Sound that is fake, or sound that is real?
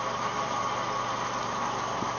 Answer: real